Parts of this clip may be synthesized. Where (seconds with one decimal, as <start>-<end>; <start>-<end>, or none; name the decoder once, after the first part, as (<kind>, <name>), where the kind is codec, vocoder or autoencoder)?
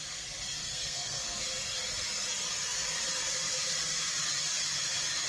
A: 0.6-1.4 (codec, SNAC)